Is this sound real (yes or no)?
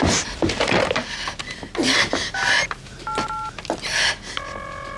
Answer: yes